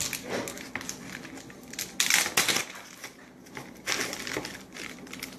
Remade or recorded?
recorded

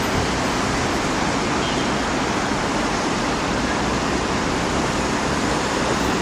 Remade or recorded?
recorded